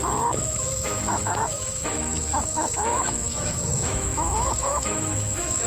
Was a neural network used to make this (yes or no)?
yes